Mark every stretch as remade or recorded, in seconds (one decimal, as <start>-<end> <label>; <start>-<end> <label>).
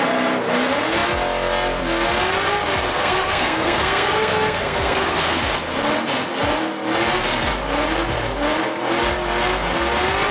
0.0-2.9 recorded; 2.9-5.4 remade; 5.4-10.3 recorded